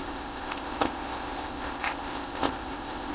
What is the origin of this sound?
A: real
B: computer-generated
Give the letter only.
B